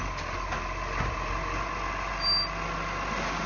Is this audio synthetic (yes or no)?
no